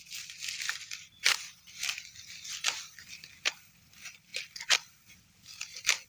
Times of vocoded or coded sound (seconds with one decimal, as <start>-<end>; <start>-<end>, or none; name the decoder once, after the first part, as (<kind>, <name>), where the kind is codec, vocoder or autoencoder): none